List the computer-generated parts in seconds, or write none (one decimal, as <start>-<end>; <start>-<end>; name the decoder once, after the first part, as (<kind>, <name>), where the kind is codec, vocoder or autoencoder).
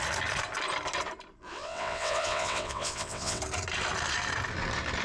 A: 1.5-3.4 (vocoder, WaveNeXt)